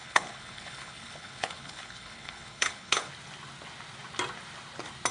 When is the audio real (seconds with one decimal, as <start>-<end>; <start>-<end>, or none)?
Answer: 3.1-5.1